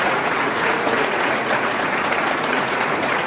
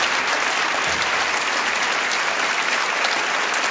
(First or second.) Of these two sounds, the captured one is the second